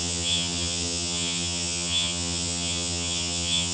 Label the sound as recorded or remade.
remade